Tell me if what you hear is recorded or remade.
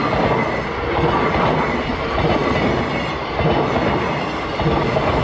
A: recorded